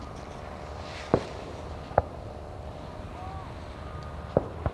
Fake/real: real